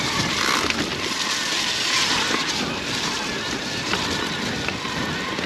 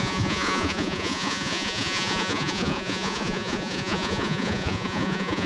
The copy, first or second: second